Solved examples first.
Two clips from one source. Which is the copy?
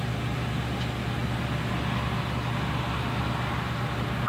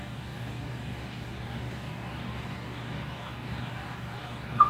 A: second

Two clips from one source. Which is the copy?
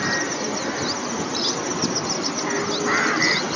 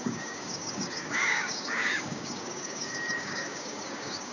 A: second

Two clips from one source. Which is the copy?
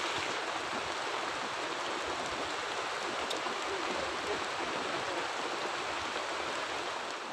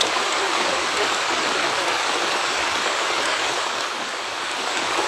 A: second